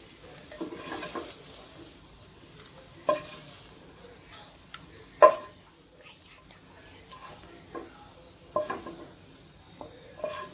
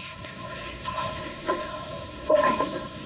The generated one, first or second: second